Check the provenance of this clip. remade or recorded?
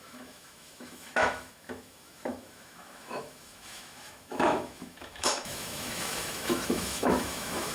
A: remade